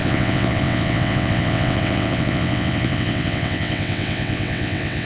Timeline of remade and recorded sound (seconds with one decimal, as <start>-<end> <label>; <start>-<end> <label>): 0.0-5.1 remade